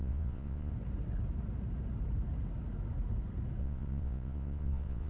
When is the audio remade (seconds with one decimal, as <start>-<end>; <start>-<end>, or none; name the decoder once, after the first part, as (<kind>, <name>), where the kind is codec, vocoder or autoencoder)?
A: 0.0-0.7 (vocoder, Vocos); 3.6-5.1